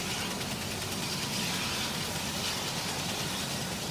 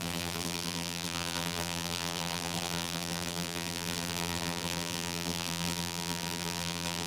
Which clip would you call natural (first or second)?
first